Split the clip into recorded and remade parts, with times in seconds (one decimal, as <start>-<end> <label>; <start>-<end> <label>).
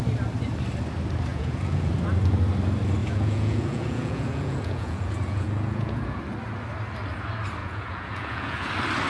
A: 0.0-1.3 recorded; 1.3-1.9 remade; 1.9-3.0 recorded; 3.0-6.2 remade; 6.2-7.6 recorded; 7.6-8.7 remade; 8.7-9.1 recorded